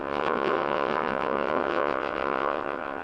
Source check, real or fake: fake